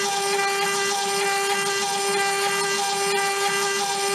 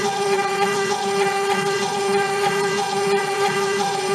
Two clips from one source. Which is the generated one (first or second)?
second